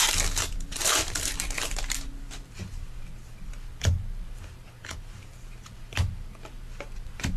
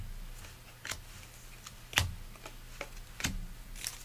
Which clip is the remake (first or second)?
first